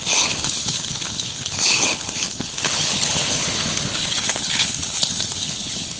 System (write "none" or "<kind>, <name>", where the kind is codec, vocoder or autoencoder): codec, HILCodec